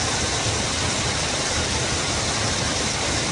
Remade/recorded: recorded